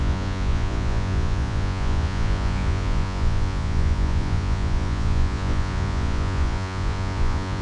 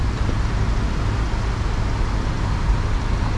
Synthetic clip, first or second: first